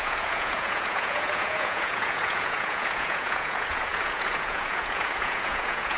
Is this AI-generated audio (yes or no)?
yes